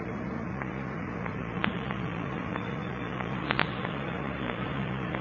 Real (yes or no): no